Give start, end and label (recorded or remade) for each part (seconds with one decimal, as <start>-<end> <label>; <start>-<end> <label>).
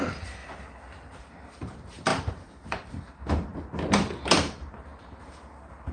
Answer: 0.0-0.4 remade; 0.4-1.2 recorded; 1.2-3.5 remade; 3.5-4.4 recorded; 4.4-5.9 remade